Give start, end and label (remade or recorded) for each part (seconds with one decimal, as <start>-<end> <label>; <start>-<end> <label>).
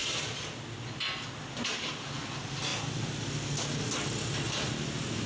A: 0.0-5.3 recorded